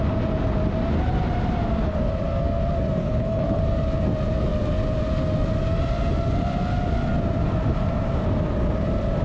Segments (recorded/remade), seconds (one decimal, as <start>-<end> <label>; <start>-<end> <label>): 0.0-3.0 recorded; 3.0-3.6 remade; 3.6-9.2 recorded